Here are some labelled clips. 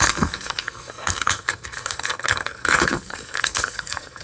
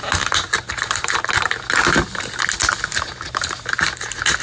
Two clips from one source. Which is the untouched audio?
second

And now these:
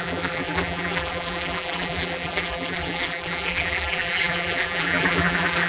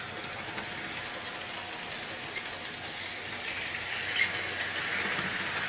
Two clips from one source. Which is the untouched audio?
second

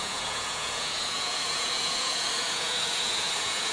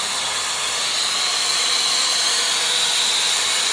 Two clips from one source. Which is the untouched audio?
second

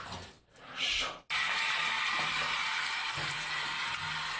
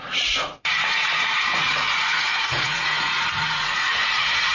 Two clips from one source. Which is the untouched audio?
first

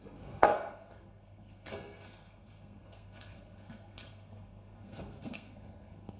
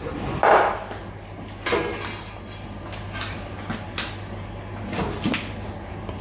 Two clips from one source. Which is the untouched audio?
second